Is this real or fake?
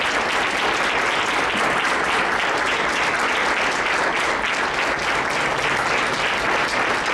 real